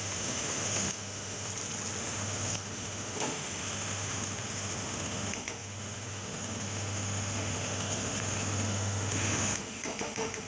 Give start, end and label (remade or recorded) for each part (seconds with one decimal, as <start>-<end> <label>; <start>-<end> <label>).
0.0-1.5 remade; 1.5-2.0 recorded; 2.0-10.5 remade